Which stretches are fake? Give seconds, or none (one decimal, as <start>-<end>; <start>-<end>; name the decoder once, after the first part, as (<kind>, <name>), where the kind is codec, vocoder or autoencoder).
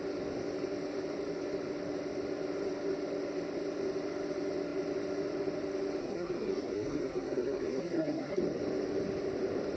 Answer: 6.0-8.4 (codec, SNAC)